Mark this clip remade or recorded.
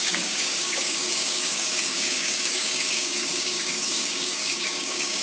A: remade